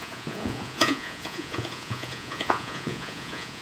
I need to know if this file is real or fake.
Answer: fake